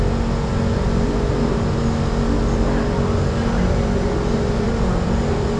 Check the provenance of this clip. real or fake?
real